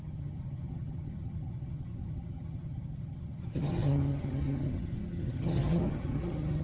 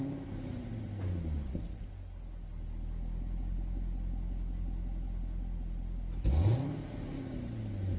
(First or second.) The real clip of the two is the second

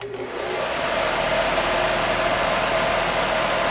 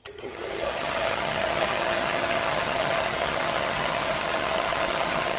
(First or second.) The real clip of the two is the first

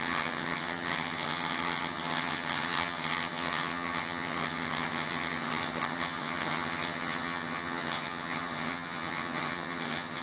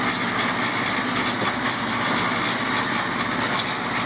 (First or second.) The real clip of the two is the second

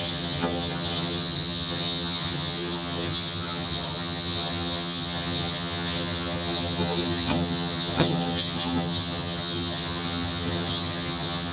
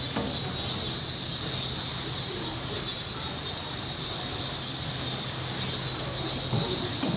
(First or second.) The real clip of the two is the second